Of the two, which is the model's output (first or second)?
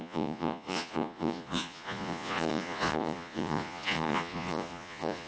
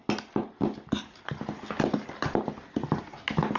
first